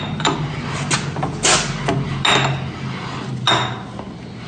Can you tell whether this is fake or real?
real